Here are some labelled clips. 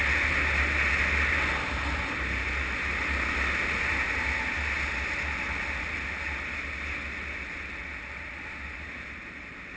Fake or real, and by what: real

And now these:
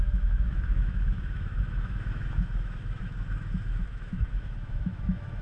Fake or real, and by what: fake, autoencoder, DAC-VAE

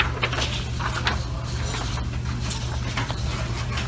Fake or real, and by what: real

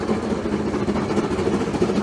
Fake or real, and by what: real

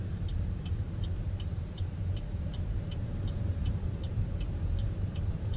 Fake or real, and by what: fake, vocoder, BigVGAN v2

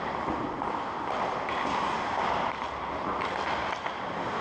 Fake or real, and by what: real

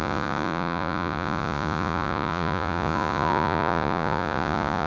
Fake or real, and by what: fake, vocoder, Vocos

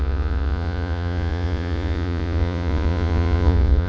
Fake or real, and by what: fake, vocoder, Vocos